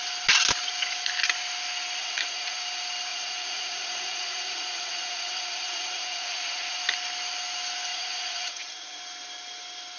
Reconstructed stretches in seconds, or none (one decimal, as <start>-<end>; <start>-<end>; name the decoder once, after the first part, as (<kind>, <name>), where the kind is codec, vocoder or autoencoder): 2.0-2.6 (vocoder, Vocos); 3.1-6.8; 7.9-9.0